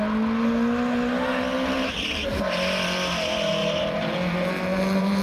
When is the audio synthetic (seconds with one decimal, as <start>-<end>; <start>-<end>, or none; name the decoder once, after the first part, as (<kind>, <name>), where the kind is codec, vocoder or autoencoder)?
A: 3.6-5.2 (vocoder, BigVGAN v2)